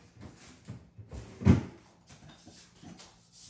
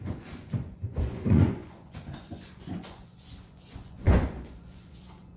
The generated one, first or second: second